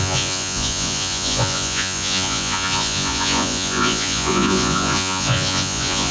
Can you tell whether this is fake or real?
fake